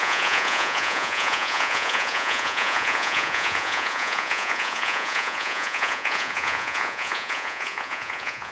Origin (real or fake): fake